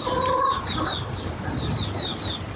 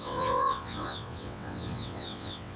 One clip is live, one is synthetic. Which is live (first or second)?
first